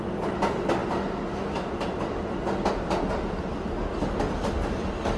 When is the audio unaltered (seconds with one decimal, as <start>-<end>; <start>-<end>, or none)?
0.0-5.2